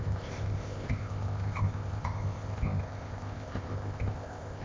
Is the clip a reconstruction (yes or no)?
yes